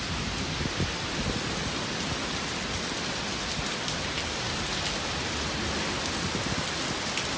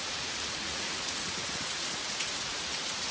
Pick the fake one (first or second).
second